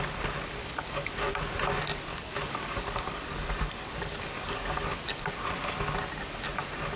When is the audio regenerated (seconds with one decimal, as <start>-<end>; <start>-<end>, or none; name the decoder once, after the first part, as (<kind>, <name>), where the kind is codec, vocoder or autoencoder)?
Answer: 0.6-1.3 (codec, DAC); 2.1-5.3